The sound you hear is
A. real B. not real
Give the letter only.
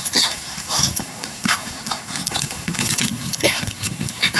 B